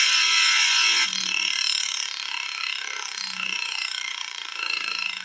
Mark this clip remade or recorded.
remade